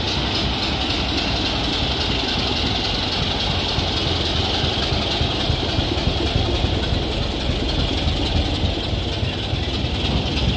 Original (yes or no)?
yes